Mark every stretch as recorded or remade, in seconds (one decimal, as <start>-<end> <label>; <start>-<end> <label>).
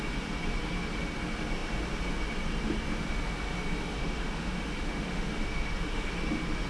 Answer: 0.0-4.0 recorded; 4.0-6.1 remade; 6.1-6.7 recorded